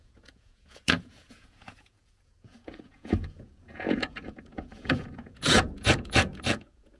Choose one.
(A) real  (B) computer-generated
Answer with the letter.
B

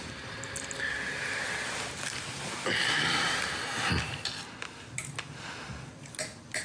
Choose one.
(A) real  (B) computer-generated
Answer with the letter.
A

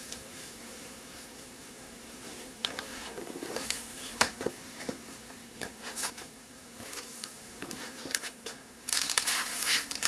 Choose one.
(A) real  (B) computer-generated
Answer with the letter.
B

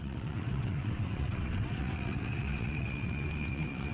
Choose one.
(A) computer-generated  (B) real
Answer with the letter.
A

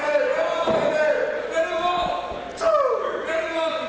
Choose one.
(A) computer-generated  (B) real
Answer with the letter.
B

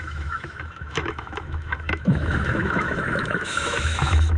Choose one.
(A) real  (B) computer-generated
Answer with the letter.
B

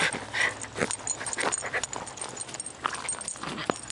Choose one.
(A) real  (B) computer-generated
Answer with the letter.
A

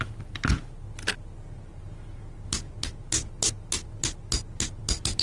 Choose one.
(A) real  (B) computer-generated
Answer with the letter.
A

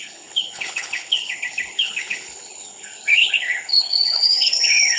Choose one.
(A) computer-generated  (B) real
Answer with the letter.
A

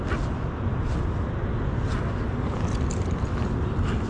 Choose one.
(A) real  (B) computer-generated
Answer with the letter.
A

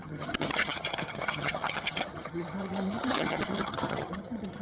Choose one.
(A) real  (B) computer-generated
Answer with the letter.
B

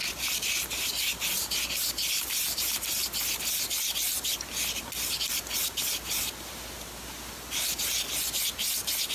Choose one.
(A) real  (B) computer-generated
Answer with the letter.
A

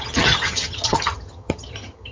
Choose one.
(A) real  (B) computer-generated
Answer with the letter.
B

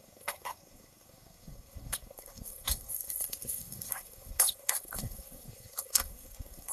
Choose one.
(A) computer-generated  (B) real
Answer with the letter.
A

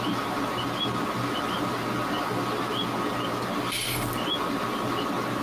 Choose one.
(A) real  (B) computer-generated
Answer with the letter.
A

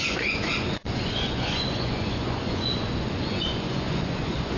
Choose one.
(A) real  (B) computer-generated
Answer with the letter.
B